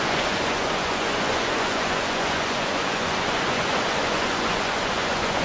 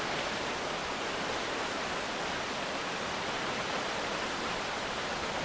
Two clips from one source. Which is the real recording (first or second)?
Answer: second